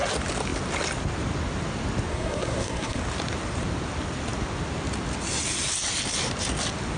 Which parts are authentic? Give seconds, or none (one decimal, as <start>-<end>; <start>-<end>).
0.0-2.1; 3.0-7.0